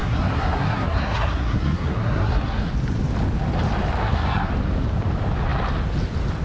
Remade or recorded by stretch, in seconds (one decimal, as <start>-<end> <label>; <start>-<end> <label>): 0.0-2.7 remade; 2.7-4.0 recorded; 4.0-4.5 remade; 4.5-6.4 recorded